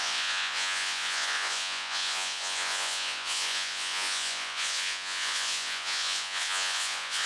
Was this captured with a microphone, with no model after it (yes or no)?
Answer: no